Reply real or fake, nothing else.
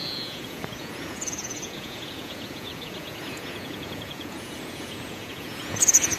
fake